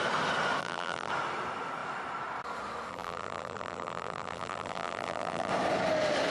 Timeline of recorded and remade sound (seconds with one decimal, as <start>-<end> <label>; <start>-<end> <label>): 0.0-0.6 recorded; 0.6-1.1 remade; 1.1-2.9 recorded; 2.9-5.5 remade; 5.5-6.3 recorded

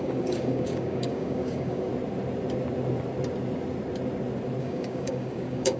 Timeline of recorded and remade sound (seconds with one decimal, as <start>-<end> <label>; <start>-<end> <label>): 0.0-1.9 remade; 1.9-4.6 recorded; 4.6-5.8 remade

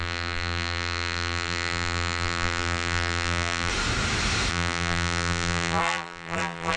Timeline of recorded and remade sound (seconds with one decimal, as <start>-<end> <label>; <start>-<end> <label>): 0.0-3.7 remade; 3.7-4.5 recorded; 4.5-6.8 remade

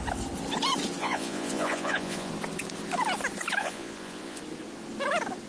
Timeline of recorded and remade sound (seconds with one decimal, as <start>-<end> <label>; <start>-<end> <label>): 0.0-1.0 recorded; 1.0-2.3 remade; 2.3-3.6 recorded; 3.6-4.4 remade; 4.4-5.5 recorded

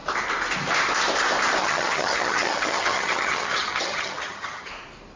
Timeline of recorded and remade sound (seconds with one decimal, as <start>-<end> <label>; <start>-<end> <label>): 0.0-1.6 recorded; 1.6-4.7 remade; 4.7-5.2 recorded

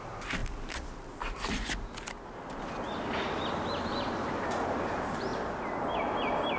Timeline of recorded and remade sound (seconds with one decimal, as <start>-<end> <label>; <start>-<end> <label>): 0.0-6.6 recorded

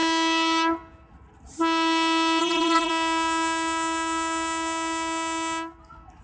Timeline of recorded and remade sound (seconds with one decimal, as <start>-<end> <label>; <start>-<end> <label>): 0.0-2.4 recorded; 2.4-2.9 remade; 2.9-6.2 recorded

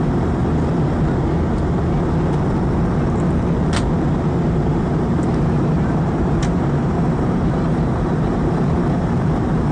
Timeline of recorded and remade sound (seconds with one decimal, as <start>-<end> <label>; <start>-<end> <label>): 0.0-0.4 remade; 0.4-4.3 recorded; 4.3-9.7 remade